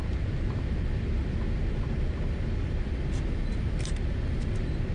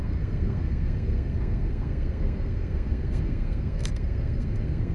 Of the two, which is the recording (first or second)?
first